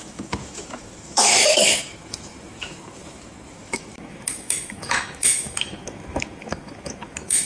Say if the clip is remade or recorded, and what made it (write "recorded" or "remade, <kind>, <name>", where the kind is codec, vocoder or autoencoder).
remade, autoencoder, DAC-VAE